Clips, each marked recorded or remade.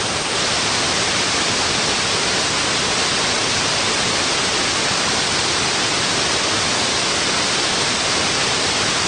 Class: remade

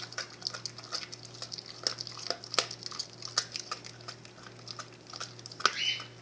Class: recorded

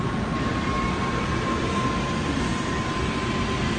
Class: recorded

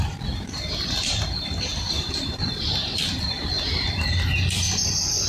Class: remade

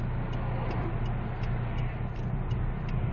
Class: recorded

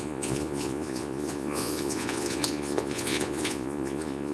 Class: remade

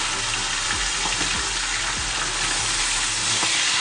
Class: recorded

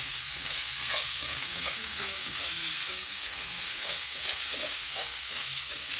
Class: remade